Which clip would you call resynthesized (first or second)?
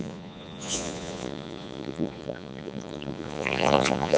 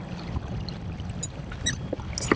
first